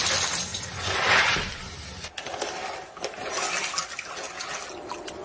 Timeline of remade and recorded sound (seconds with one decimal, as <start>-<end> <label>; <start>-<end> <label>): 0.0-5.2 recorded